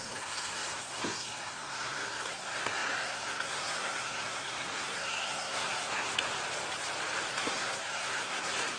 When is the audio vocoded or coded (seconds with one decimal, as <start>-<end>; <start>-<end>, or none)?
0.0-6.3; 7.3-8.8